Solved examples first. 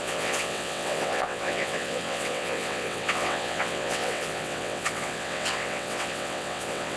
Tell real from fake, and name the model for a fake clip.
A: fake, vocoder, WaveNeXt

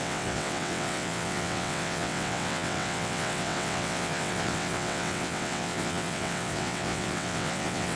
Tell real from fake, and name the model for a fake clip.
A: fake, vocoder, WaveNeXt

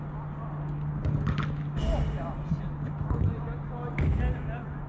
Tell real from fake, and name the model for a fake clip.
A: real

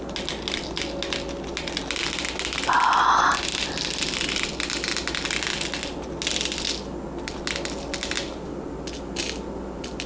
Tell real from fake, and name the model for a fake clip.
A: real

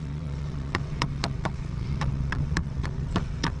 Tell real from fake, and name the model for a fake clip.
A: fake, vocoder, WaveNeXt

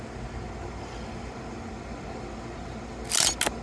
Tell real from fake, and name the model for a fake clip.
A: real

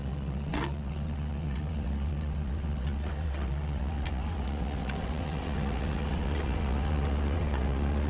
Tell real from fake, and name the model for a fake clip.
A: fake, vocoder, WaveNeXt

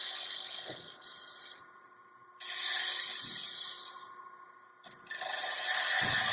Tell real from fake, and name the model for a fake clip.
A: real